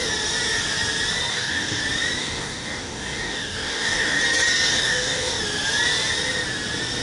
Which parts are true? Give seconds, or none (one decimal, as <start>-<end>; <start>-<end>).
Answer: 0.0-1.3; 1.8-2.2; 4.2-4.7; 5.3-7.0